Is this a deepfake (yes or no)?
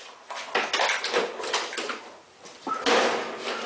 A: no